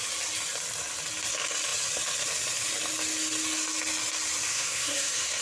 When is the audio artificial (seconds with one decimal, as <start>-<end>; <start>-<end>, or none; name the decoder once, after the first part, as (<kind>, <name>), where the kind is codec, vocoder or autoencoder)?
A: 4.5-5.4 (codec, SNAC)